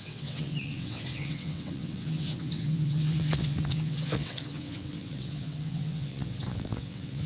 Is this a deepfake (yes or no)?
yes